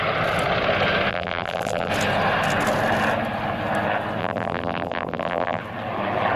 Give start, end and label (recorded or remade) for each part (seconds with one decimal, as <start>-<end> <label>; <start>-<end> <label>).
0.0-1.1 recorded; 1.1-1.9 remade; 1.9-4.2 recorded; 4.2-5.6 remade; 5.6-6.4 recorded

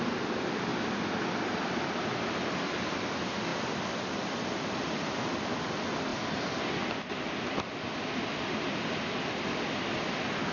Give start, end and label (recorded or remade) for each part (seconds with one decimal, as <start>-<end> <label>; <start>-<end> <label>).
0.0-3.5 recorded; 3.5-5.1 remade; 5.1-10.5 recorded